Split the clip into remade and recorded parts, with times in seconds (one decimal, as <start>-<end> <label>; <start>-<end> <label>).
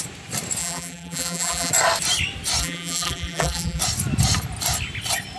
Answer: 0.0-0.6 recorded; 0.6-1.7 remade; 1.7-2.6 recorded; 2.6-3.8 remade; 3.8-5.4 recorded